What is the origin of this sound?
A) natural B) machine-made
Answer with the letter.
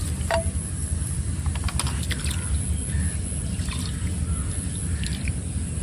A